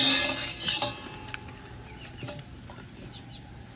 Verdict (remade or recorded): recorded